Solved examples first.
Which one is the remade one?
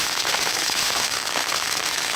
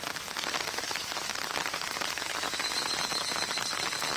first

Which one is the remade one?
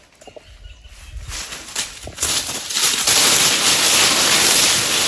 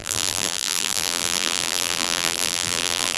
second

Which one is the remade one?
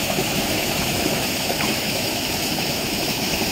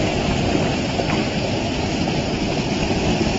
first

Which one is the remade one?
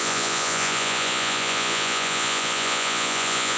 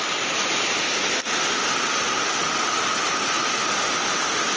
first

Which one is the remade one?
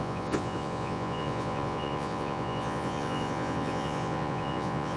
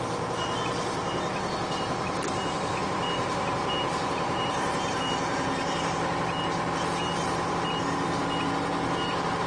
first